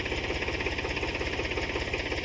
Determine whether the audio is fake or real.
real